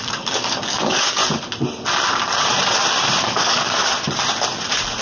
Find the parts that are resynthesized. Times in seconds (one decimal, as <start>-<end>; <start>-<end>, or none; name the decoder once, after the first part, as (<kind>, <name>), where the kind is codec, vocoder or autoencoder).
0.0-1.2 (codec, DAC); 3.2-3.8